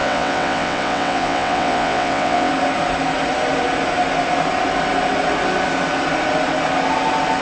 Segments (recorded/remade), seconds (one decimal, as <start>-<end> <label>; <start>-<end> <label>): 0.0-2.5 remade; 2.5-7.4 recorded